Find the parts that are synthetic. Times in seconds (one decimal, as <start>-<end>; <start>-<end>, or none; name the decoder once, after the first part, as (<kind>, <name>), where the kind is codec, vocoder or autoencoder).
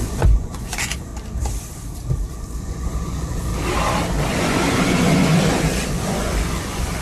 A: 0.0-1.1 (vocoder, Vocos); 2.3-3.5; 4.3-7.0